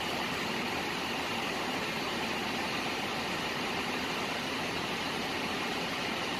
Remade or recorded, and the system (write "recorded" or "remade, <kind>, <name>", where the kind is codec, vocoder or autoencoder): remade, vocoder, BigVGAN v2